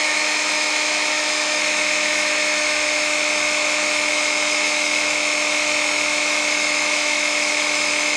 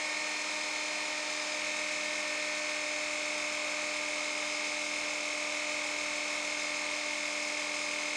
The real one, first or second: second